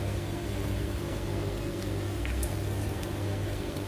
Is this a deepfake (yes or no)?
yes